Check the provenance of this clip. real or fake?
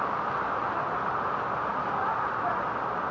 real